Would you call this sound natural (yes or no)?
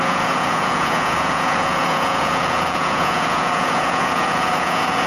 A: no